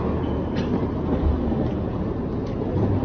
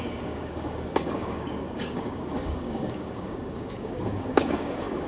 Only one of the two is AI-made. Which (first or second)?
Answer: second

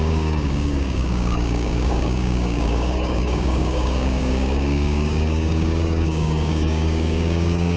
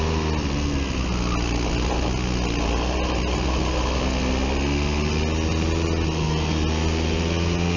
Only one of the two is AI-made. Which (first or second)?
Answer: first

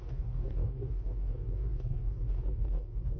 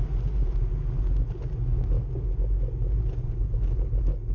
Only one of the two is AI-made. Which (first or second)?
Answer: first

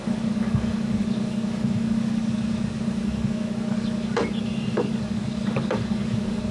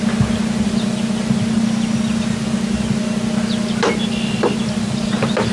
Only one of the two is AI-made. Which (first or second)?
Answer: first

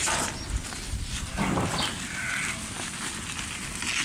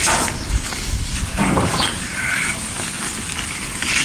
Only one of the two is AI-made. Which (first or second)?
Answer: second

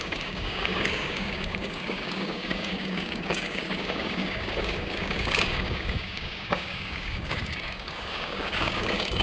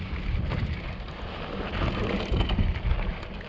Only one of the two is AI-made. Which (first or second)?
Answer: first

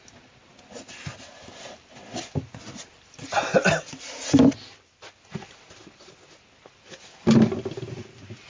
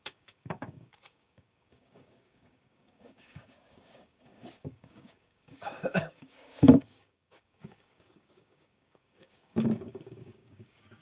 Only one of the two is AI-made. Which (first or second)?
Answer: second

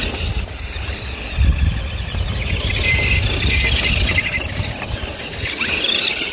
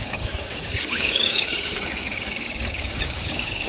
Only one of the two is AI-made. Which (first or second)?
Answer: second